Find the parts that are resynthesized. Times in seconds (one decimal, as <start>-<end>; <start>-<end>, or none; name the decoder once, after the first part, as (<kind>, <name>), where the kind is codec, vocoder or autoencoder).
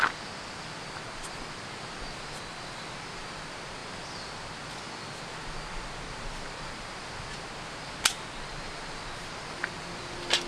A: none